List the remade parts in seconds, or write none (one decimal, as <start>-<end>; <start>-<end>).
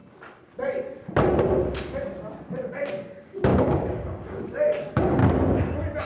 2.7-5.2